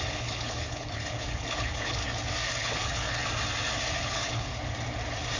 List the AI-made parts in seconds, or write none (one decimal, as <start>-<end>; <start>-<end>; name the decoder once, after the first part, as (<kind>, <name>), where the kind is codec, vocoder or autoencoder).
0.0-2.0 (codec, HILCodec); 2.6-3.2; 4.0-4.5